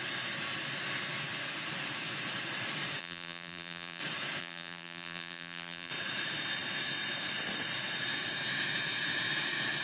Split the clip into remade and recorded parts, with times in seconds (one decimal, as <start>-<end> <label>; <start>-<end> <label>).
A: 0.0-3.0 recorded; 3.0-4.0 remade; 4.0-4.4 recorded; 4.4-5.9 remade; 5.9-9.8 recorded